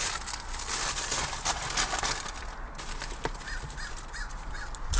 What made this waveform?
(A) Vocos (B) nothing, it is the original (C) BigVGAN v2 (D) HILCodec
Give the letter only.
B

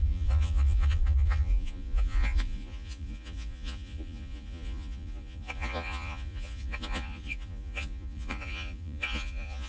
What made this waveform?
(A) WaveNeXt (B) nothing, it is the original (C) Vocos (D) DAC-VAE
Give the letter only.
C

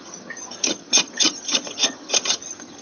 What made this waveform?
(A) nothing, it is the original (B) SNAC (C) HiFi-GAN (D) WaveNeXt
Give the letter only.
C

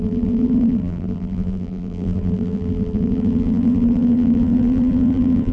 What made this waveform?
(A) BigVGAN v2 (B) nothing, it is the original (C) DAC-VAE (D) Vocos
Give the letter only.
A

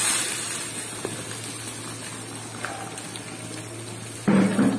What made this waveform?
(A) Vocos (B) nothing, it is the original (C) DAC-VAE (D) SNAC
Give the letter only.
B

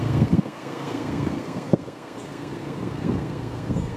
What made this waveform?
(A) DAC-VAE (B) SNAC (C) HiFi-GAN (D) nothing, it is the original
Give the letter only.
B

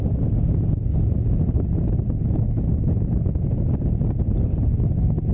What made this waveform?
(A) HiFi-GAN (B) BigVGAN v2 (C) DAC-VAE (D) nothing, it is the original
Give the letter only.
D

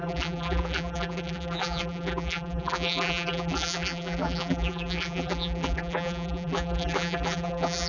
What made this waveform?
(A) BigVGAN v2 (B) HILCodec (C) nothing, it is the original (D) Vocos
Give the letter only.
A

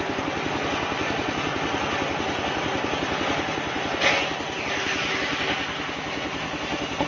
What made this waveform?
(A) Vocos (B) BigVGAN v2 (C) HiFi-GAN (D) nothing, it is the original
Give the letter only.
D